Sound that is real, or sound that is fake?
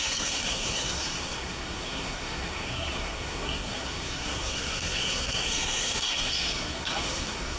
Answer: fake